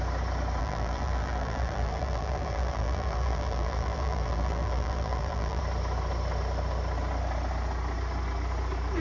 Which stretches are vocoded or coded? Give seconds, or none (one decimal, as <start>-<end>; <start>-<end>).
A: 0.6-5.6